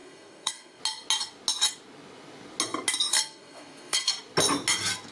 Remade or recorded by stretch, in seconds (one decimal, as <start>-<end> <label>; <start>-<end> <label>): 0.0-0.8 remade; 0.8-3.1 recorded; 3.1-4.1 remade; 4.1-5.1 recorded